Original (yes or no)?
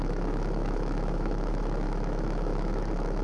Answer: no